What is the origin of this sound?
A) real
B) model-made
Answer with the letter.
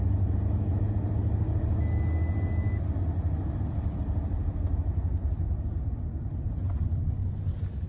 A